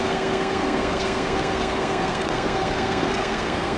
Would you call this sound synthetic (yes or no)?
yes